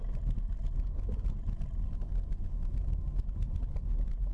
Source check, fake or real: real